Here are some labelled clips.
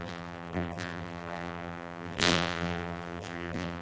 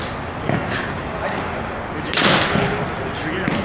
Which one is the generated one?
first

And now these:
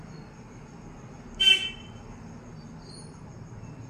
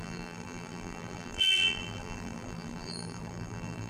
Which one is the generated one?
second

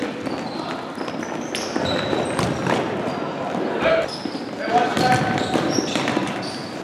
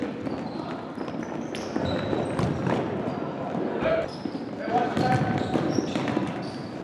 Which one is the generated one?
second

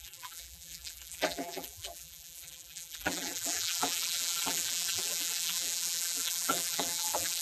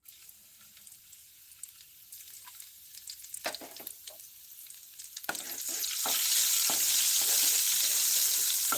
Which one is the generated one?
first